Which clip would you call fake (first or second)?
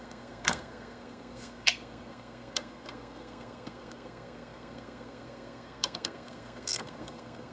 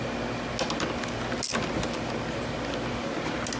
first